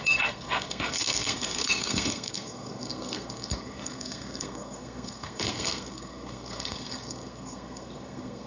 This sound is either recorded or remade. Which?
remade